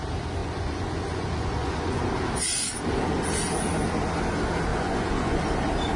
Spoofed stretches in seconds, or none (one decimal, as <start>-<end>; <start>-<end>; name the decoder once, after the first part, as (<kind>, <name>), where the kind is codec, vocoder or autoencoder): 0.4-2.0 (vocoder, Vocos); 4.7-5.4